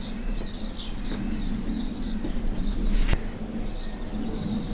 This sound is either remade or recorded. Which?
recorded